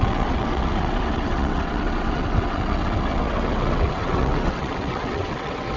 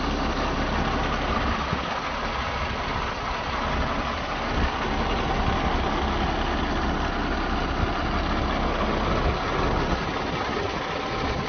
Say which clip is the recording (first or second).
second